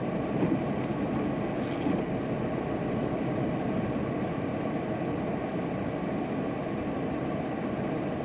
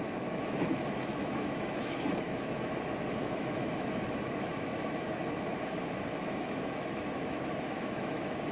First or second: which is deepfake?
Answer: second